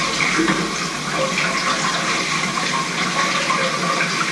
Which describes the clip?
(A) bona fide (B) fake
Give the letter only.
A